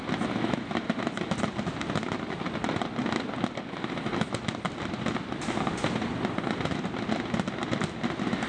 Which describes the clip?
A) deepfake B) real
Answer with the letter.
B